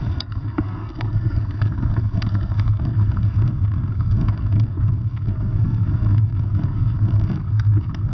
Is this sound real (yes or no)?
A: no